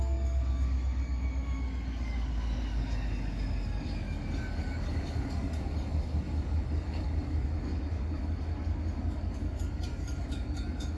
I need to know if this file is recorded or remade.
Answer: remade